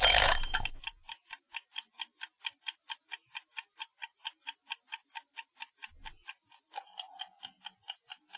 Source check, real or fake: real